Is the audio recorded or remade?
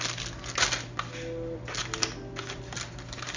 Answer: recorded